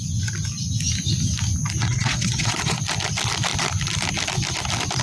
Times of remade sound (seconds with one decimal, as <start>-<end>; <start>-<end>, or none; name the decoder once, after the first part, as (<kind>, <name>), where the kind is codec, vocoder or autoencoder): 1.8-2.8 (vocoder, WaveNeXt)